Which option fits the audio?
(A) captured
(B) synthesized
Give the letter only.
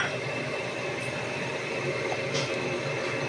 A